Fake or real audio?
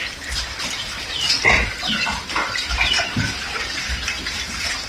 fake